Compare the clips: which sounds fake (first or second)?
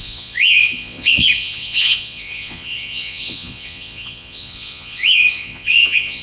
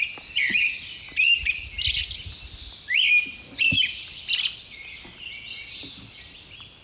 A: first